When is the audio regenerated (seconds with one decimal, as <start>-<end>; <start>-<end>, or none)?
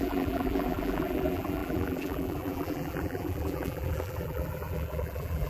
0.0-5.5